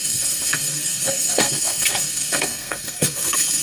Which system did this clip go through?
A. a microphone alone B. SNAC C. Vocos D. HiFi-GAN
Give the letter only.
B